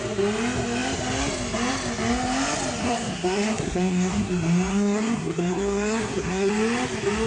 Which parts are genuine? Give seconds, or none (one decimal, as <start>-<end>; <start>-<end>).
0.0-2.8; 4.3-4.7; 6.5-7.3